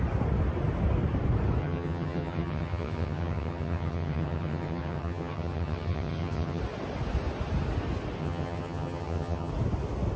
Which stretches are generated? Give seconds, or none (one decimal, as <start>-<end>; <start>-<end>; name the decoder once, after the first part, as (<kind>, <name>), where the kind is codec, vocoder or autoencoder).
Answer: 1.6-6.6 (vocoder, HiFi-GAN); 8.2-9.5